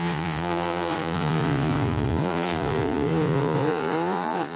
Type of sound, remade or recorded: remade